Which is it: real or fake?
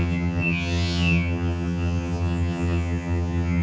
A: fake